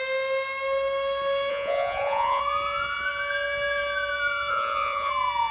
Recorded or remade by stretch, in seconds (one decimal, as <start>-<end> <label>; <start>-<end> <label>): 0.0-1.5 recorded; 1.5-2.4 remade; 2.4-4.5 recorded; 4.5-5.1 remade; 5.1-5.5 recorded